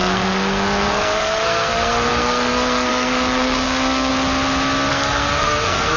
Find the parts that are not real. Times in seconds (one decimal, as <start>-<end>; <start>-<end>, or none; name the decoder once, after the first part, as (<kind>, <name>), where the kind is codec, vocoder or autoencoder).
0.0-4.1 (codec, SNAC); 4.9-6.0